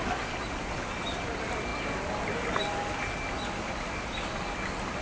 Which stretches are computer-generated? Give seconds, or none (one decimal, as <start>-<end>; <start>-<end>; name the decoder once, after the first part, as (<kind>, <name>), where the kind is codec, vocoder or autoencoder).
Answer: none

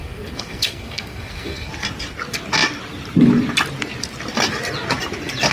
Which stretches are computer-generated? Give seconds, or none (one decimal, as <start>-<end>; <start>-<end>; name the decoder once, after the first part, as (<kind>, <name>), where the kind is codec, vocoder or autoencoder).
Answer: 0.0-1.7 (codec, SNAC)

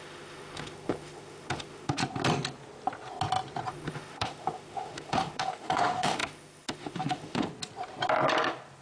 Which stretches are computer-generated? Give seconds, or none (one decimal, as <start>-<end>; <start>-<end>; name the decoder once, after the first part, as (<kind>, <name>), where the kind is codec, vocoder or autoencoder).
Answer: 0.0-2.0 (autoencoder, DAC-VAE); 3.7-7.5

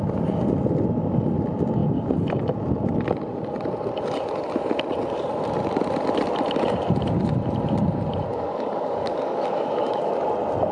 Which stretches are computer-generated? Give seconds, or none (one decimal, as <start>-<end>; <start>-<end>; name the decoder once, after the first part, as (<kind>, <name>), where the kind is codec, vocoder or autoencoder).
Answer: 8.3-10.1 (codec, DAC)

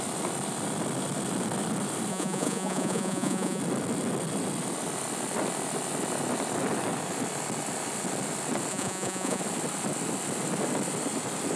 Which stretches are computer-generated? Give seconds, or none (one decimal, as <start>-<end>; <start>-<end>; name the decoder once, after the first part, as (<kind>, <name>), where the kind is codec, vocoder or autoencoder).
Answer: 2.1-3.6 (vocoder, Vocos); 8.7-9.4

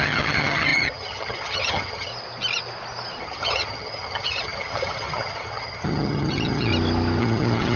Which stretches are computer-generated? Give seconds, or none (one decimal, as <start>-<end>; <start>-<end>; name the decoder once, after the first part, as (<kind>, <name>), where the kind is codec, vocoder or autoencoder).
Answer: 0.0-2.1 (vocoder, HiFi-GAN); 3.2-6.7; 7.2-7.8

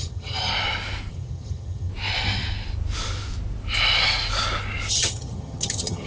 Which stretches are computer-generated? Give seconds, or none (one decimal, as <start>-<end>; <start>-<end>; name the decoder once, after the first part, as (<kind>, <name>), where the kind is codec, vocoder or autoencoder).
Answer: 0.0-0.5 (vocoder, HiFi-GAN); 1.1-1.9; 4.9-6.1